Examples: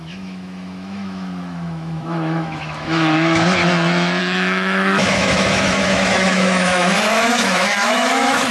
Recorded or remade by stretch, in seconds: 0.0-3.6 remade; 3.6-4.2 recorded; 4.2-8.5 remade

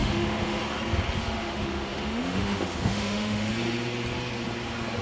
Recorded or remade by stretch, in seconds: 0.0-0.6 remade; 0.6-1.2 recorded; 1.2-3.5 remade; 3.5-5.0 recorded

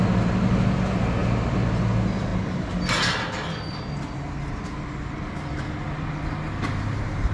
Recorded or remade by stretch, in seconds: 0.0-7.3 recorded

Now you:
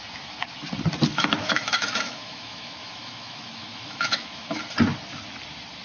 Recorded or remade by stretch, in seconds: 0.0-1.1 recorded; 1.1-4.6 remade; 4.6-5.8 recorded

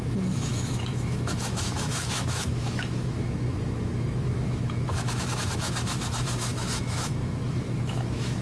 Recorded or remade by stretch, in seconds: 0.0-8.4 remade

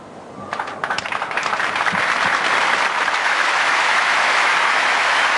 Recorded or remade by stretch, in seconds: 0.0-3.2 recorded; 3.2-5.0 remade; 5.0-5.4 recorded

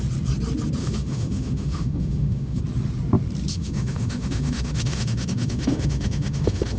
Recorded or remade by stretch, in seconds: 0.0-0.8 recorded; 0.8-2.6 remade; 2.6-3.5 recorded; 3.5-6.8 remade